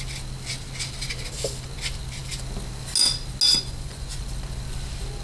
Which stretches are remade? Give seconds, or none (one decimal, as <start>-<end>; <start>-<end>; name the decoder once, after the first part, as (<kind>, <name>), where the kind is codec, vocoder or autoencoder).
3.5-4.2 (vocoder, Vocos)